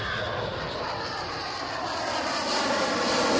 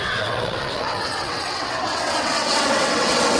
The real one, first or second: first